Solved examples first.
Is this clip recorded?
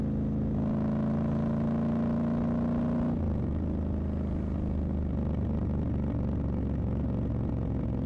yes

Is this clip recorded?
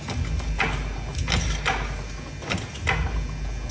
yes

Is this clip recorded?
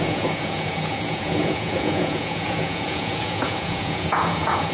no